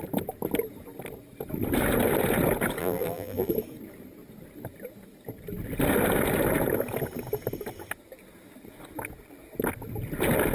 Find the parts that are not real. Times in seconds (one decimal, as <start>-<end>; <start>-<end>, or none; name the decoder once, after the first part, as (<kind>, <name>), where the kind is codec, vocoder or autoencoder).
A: 2.8-3.5 (vocoder, BigVGAN v2)